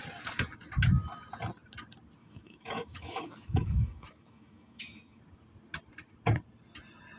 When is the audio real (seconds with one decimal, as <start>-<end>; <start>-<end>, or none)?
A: 0.0-2.2; 5.2-7.2